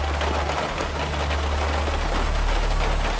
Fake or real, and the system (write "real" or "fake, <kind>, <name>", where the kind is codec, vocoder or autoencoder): real